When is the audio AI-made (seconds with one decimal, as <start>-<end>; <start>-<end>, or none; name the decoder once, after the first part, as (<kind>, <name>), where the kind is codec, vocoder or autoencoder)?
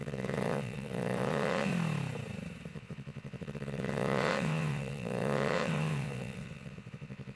0.0-1.7 (vocoder, WaveNeXt); 2.7-7.4